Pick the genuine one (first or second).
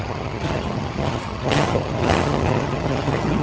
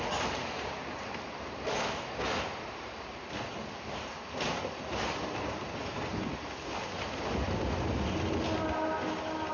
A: second